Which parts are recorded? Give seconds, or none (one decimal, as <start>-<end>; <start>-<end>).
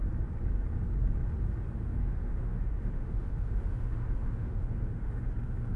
0.0-1.8; 5.3-5.8